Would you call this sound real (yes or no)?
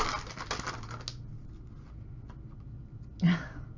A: yes